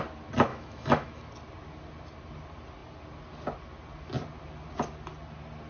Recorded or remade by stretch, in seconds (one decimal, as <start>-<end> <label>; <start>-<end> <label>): 0.0-0.5 recorded; 0.5-1.3 remade; 1.3-5.7 recorded